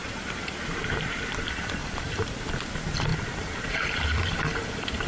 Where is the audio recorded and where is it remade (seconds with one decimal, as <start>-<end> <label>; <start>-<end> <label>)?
0.0-1.4 remade; 1.4-1.8 recorded; 1.8-2.5 remade; 2.5-3.1 recorded; 3.1-3.9 remade; 3.9-5.1 recorded

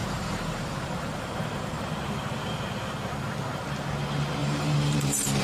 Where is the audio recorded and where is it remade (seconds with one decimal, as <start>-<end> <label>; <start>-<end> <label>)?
0.0-1.9 remade; 1.9-4.4 recorded; 4.4-5.4 remade

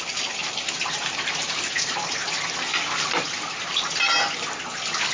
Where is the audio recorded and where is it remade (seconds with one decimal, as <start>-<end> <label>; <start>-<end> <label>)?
0.0-0.4 recorded; 0.4-1.6 remade; 1.6-2.2 recorded; 2.2-4.2 remade; 4.2-5.1 recorded

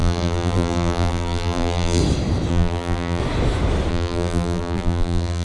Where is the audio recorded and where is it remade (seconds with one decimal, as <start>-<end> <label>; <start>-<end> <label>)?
0.0-2.0 remade; 2.0-2.5 recorded; 2.5-3.2 remade; 3.2-3.9 recorded; 3.9-5.4 remade

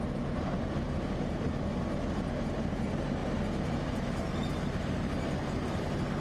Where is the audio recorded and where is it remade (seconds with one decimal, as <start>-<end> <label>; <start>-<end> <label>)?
0.0-6.2 recorded

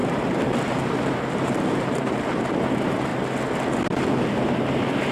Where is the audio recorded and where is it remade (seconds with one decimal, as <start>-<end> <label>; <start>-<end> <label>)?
0.0-3.1 remade; 3.1-4.5 recorded; 4.5-5.1 remade

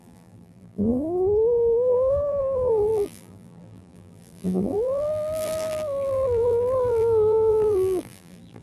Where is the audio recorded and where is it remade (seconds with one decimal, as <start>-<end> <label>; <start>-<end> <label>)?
0.0-8.6 remade

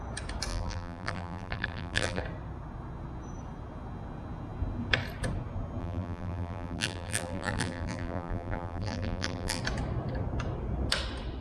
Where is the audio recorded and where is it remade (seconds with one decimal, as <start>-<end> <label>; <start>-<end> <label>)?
0.0-0.5 recorded; 0.5-2.2 remade; 2.2-5.8 recorded; 5.8-9.6 remade; 9.6-11.4 recorded